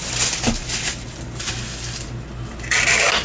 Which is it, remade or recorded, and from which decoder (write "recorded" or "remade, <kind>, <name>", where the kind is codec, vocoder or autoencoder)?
recorded